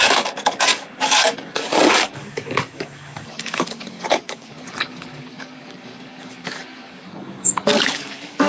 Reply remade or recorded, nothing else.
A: remade